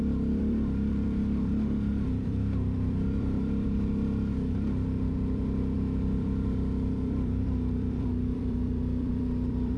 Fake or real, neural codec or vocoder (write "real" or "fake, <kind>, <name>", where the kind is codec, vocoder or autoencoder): fake, vocoder, BigVGAN v2